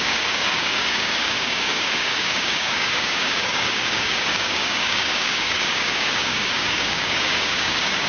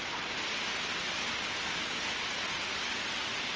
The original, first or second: second